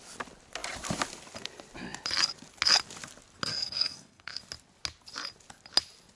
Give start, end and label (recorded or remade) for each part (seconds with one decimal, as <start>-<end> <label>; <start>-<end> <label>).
0.0-3.5 recorded; 3.5-4.4 remade; 4.4-6.2 recorded